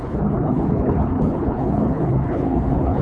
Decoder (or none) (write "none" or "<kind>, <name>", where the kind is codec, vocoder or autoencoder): codec, HILCodec